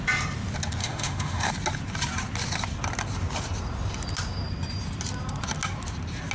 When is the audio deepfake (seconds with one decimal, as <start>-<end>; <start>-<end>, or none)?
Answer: 0.8-1.5